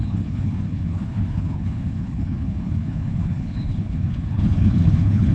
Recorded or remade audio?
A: remade